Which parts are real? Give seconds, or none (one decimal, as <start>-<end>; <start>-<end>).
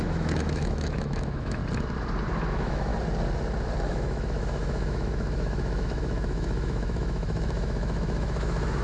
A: 1.6-2.5; 2.9-3.9